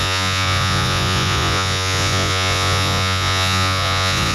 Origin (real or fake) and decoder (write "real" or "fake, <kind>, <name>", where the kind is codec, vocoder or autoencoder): fake, vocoder, Vocos